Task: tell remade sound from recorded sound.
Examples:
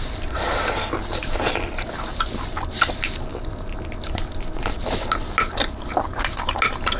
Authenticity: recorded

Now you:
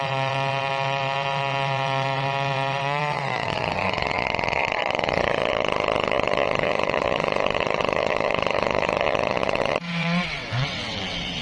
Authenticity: remade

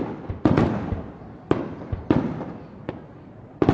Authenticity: recorded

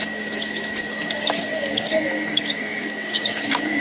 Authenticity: remade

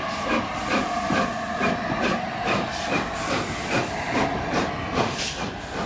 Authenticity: recorded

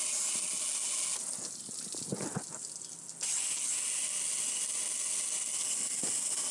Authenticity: recorded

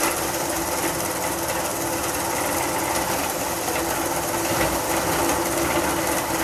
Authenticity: recorded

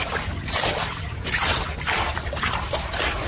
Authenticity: recorded